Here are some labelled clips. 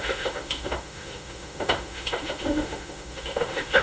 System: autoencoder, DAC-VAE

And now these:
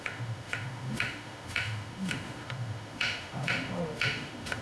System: autoencoder, DAC-VAE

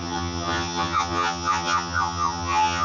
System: vocoder, HiFi-GAN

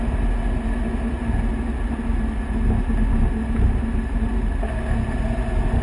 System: none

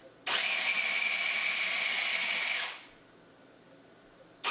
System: none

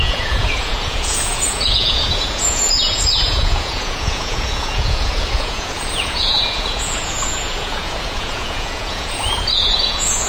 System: vocoder, Vocos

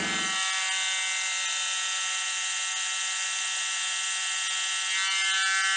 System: none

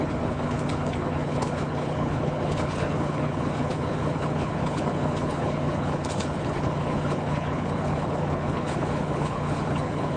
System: codec, HILCodec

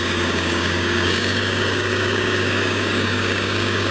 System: codec, DAC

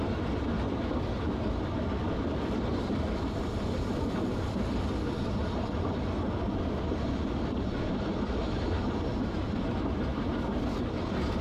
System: none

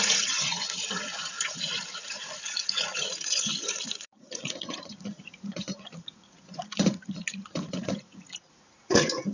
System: vocoder, Vocos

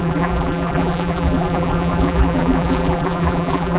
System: vocoder, BigVGAN v2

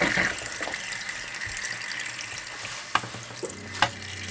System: none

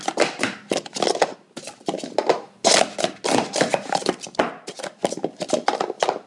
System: none